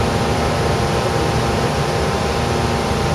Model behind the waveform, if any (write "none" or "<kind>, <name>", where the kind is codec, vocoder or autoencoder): vocoder, BigVGAN v2